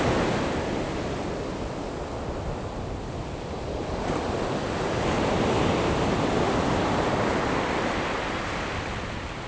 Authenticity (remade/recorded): recorded